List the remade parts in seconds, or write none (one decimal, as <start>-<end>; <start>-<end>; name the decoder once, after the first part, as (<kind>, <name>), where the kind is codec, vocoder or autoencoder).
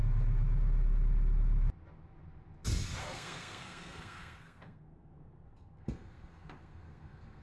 3.0-7.4 (codec, SNAC)